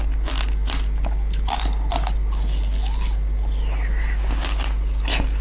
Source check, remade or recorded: recorded